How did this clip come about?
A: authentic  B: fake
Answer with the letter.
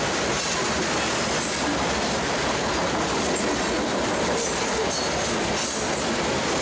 A